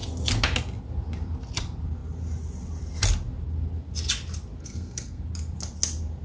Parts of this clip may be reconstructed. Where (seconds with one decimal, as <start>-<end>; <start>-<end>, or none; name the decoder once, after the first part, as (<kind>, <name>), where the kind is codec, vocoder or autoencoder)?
4.6-5.2 (codec, SNAC)

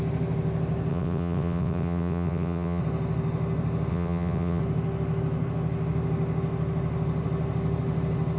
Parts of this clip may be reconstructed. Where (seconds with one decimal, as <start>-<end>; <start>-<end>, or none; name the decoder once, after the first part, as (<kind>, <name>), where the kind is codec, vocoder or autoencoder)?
0.9-2.8 (vocoder, WaveNeXt); 3.9-4.6